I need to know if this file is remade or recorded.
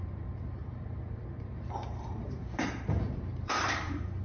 remade